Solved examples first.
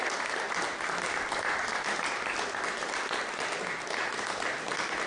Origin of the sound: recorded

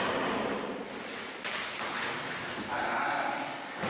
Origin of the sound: recorded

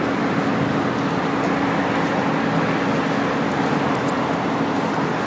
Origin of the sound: recorded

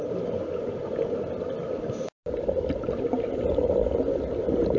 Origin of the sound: recorded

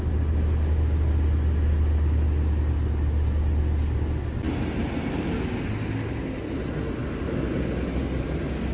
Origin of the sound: recorded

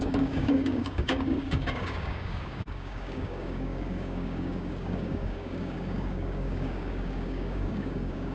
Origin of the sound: remade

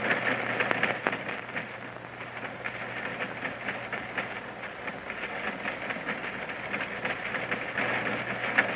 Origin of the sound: recorded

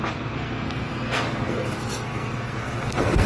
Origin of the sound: remade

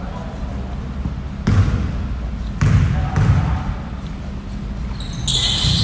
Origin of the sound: recorded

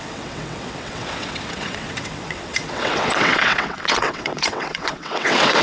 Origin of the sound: remade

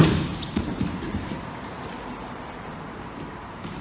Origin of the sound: remade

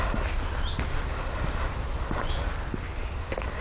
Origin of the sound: recorded